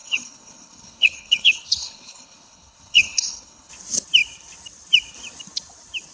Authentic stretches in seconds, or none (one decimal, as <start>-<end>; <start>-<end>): 3.7-6.1

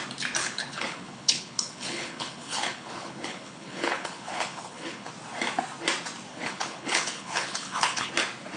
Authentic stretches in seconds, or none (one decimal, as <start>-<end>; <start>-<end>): 0.0-0.4; 5.1-6.3; 8.1-8.6

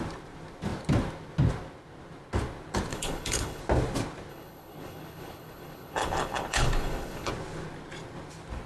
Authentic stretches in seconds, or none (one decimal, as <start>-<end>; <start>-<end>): 0.0-2.9; 3.6-4.3; 7.3-8.7

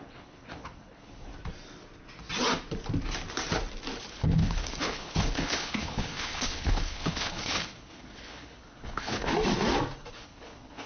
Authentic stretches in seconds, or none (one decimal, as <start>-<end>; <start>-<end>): 1.3-4.1; 9.3-10.1

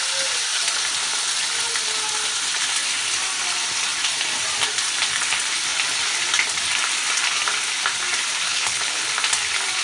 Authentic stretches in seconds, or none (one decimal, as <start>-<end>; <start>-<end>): 0.0-8.5; 9.1-9.8

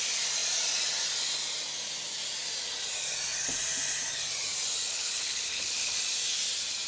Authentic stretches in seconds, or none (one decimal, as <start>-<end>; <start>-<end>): 0.0-4.9; 6.0-6.9